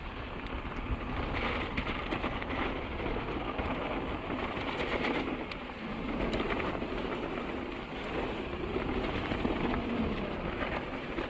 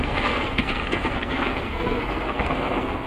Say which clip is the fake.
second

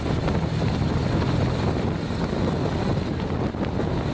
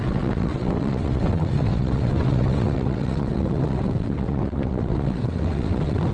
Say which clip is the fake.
second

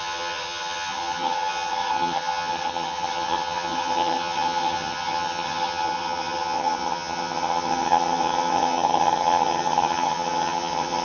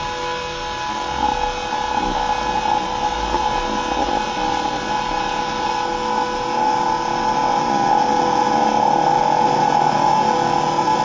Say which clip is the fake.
first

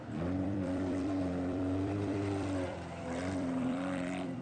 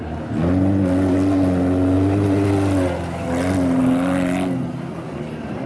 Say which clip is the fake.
first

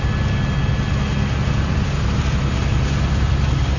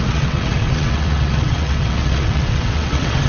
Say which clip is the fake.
second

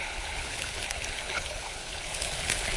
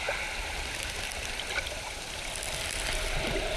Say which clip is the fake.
first